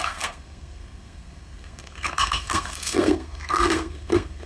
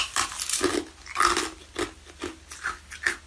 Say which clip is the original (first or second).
second